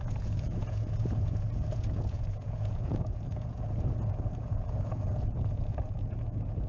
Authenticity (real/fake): fake